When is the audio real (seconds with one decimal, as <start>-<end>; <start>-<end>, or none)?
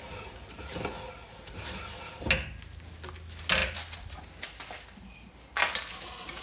0.0-6.4